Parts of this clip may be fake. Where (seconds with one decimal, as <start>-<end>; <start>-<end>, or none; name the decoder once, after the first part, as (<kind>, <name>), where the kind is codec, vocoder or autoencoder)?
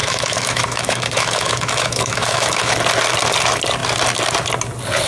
0.0-2.7 (autoencoder, DAC-VAE)